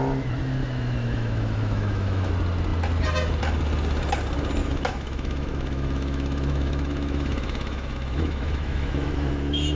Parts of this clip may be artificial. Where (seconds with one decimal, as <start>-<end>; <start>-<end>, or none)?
0.6-2.3; 4.6-9.8